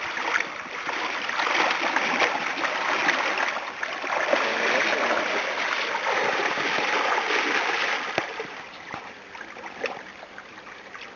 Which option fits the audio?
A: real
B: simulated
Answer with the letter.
A